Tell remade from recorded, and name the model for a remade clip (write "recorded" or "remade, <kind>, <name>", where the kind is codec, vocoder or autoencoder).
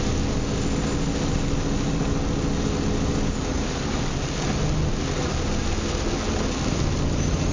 recorded